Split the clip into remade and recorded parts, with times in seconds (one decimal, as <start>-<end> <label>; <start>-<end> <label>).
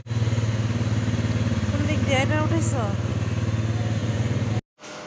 0.0-4.0 recorded; 4.0-4.5 remade; 4.5-5.1 recorded